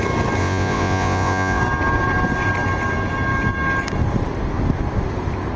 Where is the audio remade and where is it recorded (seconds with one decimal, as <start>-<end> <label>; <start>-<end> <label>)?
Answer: 0.0-0.4 recorded; 0.4-1.6 remade; 1.6-5.6 recorded